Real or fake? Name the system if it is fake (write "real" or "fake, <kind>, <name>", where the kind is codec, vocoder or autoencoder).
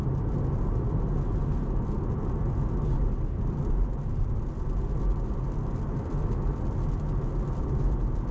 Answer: real